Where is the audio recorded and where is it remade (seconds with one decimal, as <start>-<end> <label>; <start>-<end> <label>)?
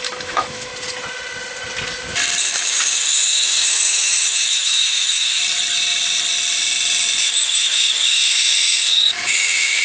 0.0-0.7 remade; 0.7-2.4 recorded; 2.4-5.4 remade; 5.4-7.2 recorded; 7.2-9.8 remade